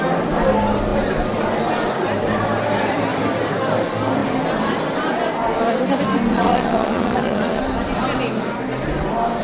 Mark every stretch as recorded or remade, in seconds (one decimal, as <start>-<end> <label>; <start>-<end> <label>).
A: 0.0-6.3 recorded; 6.3-7.6 remade; 7.6-9.4 recorded